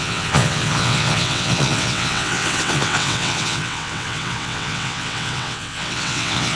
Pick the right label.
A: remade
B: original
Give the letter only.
A